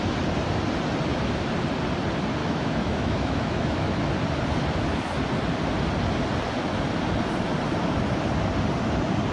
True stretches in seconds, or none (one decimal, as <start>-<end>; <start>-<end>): 0.0-2.4; 4.0-9.3